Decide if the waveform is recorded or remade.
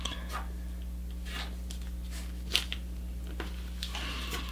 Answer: recorded